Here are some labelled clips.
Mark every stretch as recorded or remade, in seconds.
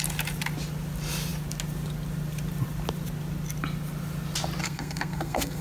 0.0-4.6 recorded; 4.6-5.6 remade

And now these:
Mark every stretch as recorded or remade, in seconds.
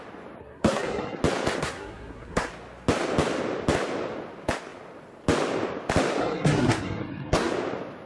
0.0-0.4 recorded; 0.4-1.2 remade; 1.2-1.6 recorded; 1.6-2.5 remade; 2.5-6.2 recorded; 6.2-7.5 remade; 7.5-8.1 recorded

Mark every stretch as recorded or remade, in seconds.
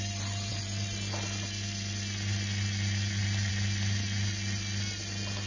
0.0-5.5 recorded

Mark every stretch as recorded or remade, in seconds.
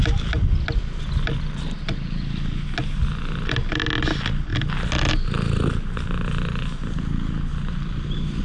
0.0-8.4 recorded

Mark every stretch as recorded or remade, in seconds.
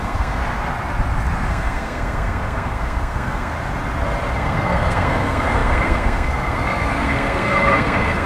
0.0-0.4 remade; 0.4-1.5 recorded; 1.5-3.5 remade; 3.5-4.3 recorded; 4.3-8.3 remade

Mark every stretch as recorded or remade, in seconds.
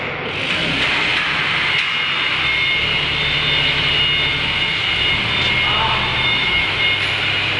0.0-6.1 recorded; 6.1-6.8 remade; 6.8-7.6 recorded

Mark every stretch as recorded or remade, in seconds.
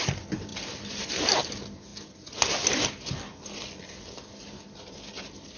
0.0-5.6 recorded